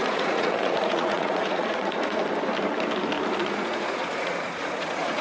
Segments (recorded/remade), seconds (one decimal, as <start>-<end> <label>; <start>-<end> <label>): 0.0-2.2 remade; 2.2-3.4 recorded; 3.4-5.2 remade